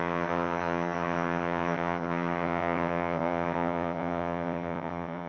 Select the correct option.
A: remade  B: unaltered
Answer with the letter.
A